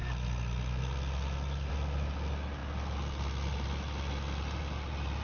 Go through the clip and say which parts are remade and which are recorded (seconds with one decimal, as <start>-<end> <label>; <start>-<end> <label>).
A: 0.0-5.2 recorded